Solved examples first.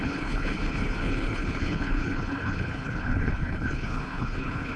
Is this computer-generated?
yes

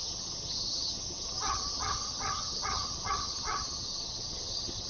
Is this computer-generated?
yes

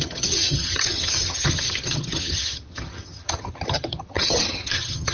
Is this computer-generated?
yes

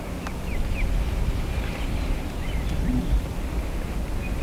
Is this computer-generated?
no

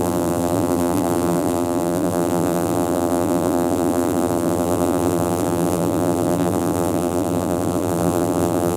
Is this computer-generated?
yes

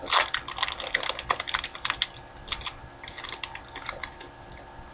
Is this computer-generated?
no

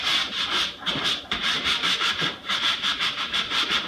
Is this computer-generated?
yes